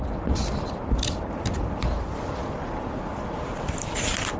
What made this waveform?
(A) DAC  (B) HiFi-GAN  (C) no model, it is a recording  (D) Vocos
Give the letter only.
C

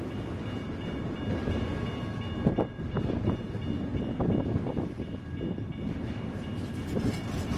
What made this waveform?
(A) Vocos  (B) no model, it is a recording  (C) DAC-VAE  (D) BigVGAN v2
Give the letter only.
B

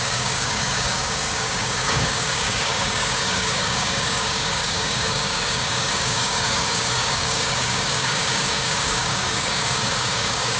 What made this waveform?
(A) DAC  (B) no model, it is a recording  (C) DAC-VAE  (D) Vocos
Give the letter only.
A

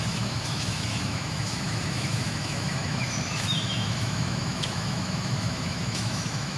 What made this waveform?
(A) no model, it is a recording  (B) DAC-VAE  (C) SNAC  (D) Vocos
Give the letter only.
B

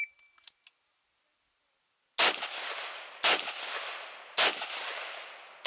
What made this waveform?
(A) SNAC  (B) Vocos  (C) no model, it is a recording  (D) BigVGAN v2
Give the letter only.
C